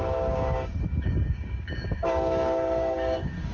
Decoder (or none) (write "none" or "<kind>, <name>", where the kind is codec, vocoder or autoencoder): codec, DAC